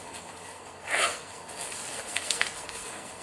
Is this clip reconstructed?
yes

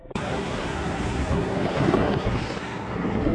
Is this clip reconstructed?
yes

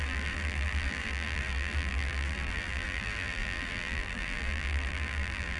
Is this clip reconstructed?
yes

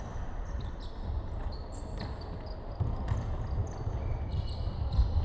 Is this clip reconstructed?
no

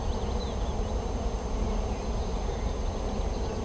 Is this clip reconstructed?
no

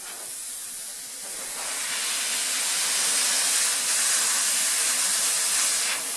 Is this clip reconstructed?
no